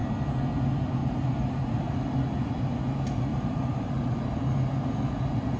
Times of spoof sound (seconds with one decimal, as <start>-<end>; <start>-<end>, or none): 1.0-1.9; 3.3-4.2